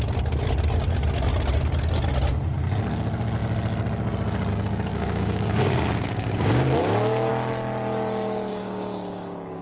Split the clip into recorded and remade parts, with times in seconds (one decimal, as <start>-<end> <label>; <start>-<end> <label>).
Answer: 0.0-4.9 recorded; 4.9-7.3 remade; 7.3-8.5 recorded; 8.5-9.6 remade